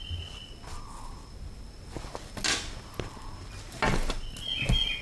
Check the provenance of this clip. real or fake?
real